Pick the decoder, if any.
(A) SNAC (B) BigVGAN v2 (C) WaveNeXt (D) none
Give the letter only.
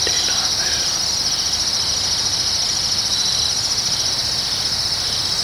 D